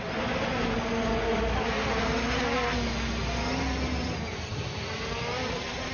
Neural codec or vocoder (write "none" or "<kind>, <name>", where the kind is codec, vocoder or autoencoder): none